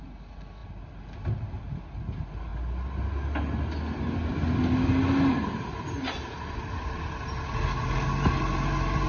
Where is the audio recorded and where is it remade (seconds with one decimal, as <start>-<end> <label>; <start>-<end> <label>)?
0.0-9.1 recorded